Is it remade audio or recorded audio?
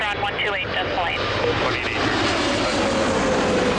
recorded